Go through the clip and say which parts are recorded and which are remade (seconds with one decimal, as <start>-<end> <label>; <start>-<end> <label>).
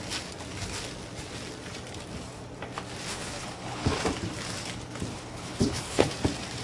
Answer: 0.0-3.1 recorded; 3.1-3.9 remade; 3.9-5.1 recorded; 5.1-6.1 remade; 6.1-6.6 recorded